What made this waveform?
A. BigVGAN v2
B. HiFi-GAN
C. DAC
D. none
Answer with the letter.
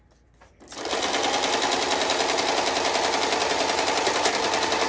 A